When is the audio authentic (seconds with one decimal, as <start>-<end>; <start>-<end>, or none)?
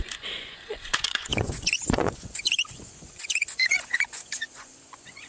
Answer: none